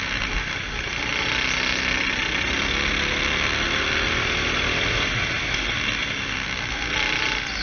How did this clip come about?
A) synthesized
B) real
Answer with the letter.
B